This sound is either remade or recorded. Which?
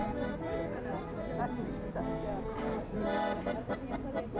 recorded